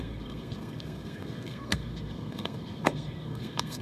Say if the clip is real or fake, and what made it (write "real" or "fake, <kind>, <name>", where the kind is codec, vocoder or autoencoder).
fake, codec, SNAC